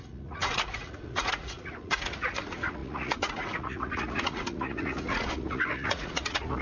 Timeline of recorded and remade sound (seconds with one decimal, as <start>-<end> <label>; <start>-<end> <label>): 0.0-6.6 remade